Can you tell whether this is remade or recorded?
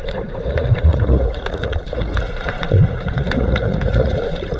remade